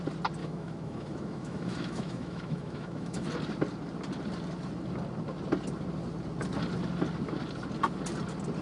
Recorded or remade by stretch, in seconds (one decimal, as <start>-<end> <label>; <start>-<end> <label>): 0.0-0.4 recorded; 0.4-3.3 remade; 3.3-8.6 recorded